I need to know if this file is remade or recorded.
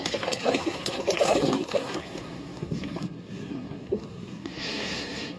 remade